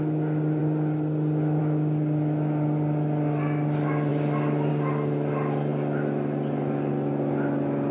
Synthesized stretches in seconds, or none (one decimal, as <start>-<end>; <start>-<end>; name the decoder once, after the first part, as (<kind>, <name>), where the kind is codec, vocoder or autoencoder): none